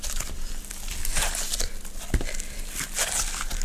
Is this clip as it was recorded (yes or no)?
yes